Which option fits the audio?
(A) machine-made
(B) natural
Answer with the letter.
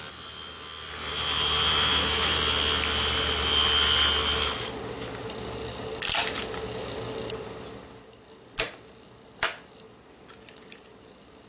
B